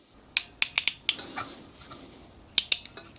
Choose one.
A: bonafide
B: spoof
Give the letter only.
A